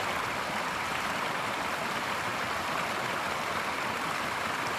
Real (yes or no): yes